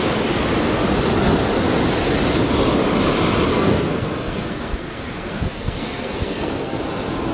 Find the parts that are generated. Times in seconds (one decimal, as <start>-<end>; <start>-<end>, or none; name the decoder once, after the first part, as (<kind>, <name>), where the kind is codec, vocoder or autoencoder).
3.5-6.8 (codec, SNAC)